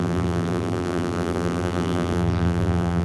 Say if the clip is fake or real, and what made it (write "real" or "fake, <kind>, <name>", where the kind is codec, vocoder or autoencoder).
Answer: fake, vocoder, BigVGAN v2